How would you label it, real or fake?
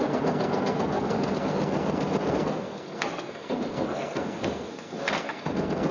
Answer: fake